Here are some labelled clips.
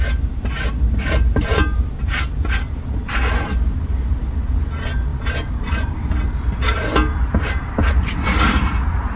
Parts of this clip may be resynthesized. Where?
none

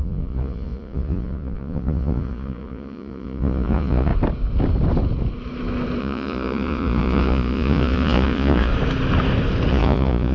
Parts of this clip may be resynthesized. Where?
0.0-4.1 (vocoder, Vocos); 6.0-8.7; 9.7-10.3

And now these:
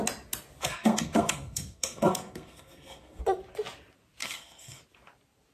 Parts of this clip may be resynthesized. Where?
0.6-3.2 (codec, SNAC); 4.2-4.8

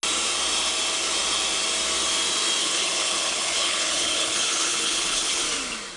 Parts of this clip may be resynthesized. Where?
2.6-5.4 (codec, HILCodec)